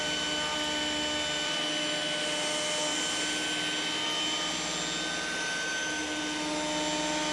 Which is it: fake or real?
real